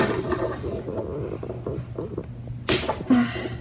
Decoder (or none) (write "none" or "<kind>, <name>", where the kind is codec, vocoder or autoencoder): none